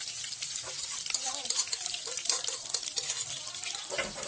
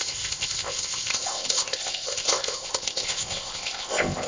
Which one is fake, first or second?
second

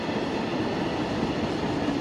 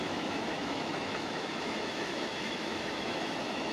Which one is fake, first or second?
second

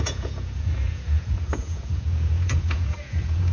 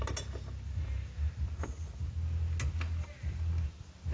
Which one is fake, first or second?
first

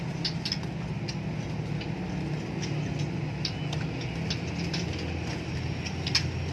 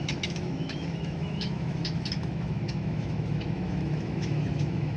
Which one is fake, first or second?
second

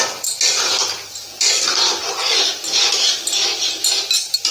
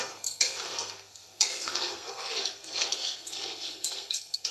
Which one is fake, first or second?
second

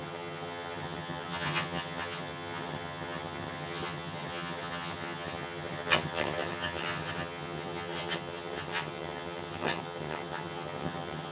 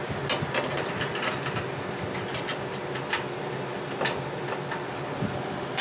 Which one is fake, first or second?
first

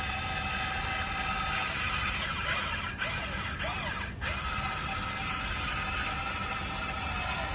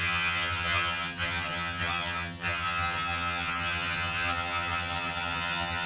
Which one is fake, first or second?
second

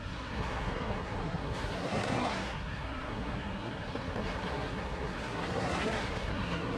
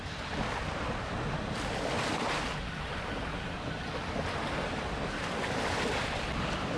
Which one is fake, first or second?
first